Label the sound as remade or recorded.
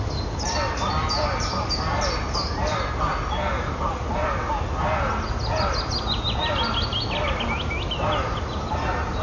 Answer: recorded